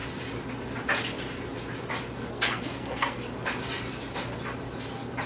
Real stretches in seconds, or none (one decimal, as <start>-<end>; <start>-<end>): 0.0-2.3; 3.2-5.3